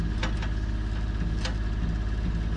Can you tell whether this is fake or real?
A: real